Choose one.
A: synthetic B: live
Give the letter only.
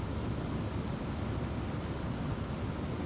B